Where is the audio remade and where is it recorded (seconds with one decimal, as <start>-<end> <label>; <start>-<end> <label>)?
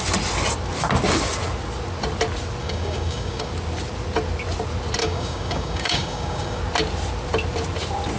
0.0-2.6 recorded; 2.6-3.5 remade; 3.5-5.0 recorded; 5.0-6.6 remade; 6.6-8.2 recorded